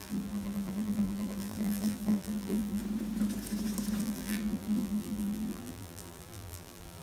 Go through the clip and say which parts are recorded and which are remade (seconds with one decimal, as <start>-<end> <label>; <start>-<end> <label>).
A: 0.0-2.8 remade; 2.8-4.0 recorded; 4.0-7.0 remade